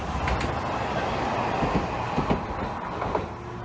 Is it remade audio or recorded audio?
recorded